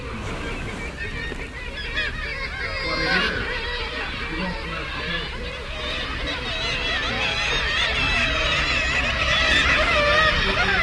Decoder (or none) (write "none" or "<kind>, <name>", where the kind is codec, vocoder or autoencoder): none